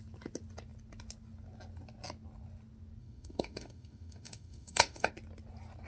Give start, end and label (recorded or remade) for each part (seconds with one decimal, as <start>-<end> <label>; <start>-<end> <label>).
0.0-3.0 recorded; 3.0-5.1 remade; 5.1-5.9 recorded